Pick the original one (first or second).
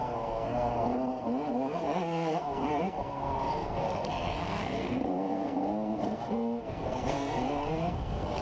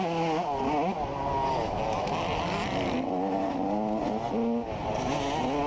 second